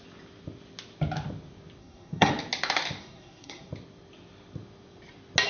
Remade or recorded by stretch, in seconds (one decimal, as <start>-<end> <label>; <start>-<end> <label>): 0.0-1.8 recorded; 1.8-2.3 remade; 2.3-3.0 recorded; 3.0-3.7 remade; 3.7-5.5 recorded